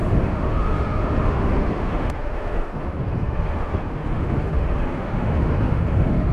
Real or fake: fake